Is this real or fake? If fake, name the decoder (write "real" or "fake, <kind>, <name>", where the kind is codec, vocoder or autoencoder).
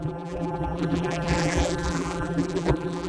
fake, vocoder, BigVGAN v2